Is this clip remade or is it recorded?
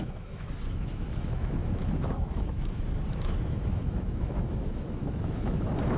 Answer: remade